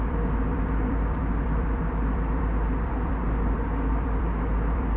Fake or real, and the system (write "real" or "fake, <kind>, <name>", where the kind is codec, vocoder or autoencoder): fake, vocoder, BigVGAN v2